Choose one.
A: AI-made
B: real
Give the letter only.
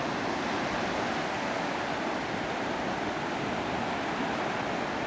B